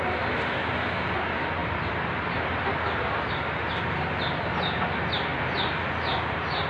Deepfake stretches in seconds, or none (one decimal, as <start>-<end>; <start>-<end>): none